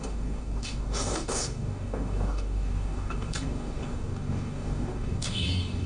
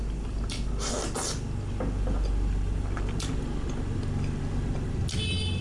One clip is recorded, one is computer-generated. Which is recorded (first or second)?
second